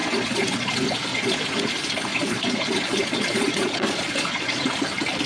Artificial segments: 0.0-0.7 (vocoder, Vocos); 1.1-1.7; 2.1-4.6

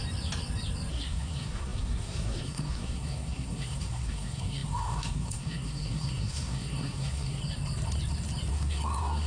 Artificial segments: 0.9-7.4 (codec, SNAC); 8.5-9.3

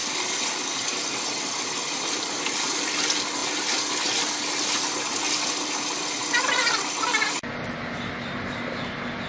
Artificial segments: none

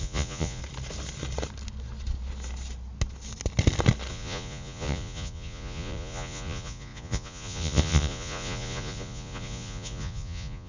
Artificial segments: 0.0-0.6 (vocoder, Vocos); 4.1-10.7

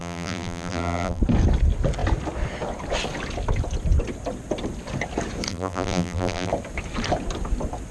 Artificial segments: 0.0-1.2 (vocoder, BigVGAN v2); 5.5-6.5